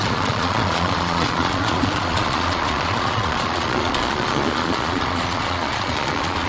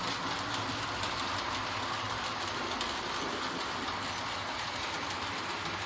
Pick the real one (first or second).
second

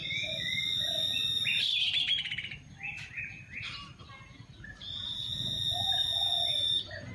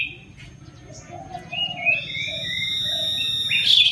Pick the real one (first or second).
second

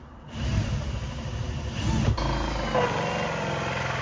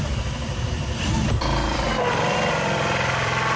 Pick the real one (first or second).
first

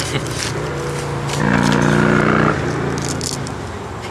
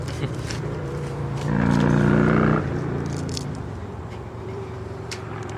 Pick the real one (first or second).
first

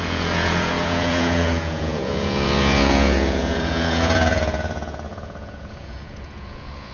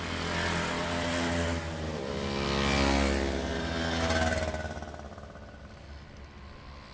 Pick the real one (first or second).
second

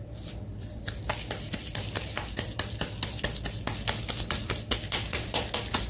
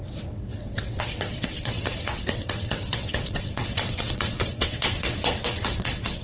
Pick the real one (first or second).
first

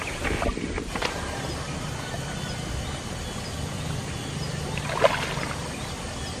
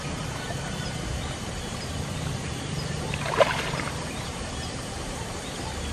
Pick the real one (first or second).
first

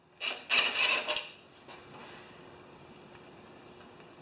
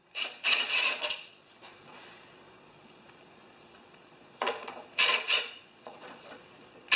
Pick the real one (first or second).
first